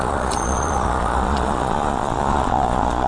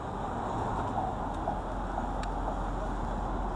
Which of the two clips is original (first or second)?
second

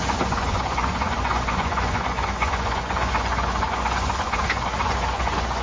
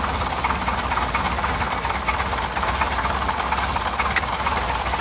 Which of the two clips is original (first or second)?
second